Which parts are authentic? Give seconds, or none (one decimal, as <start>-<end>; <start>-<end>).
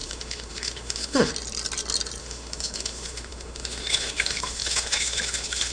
1.3-2.2